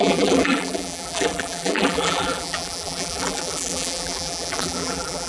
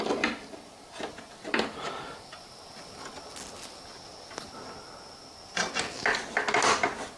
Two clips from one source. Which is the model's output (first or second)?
first